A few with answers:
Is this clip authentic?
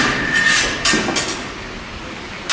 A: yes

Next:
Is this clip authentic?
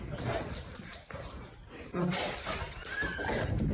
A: no